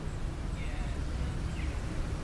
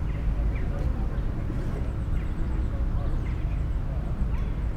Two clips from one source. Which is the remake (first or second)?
first